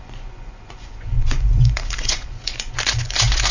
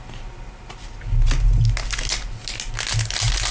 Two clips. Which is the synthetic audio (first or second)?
first